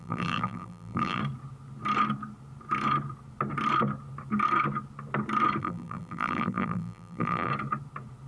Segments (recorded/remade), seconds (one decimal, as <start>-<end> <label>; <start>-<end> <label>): 0.0-1.2 remade; 1.2-5.6 recorded; 5.6-7.5 remade; 7.5-8.3 recorded